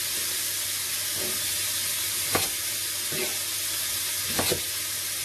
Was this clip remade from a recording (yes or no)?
no